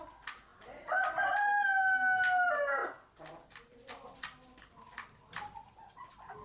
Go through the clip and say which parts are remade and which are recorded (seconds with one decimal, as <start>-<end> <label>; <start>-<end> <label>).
0.0-6.4 recorded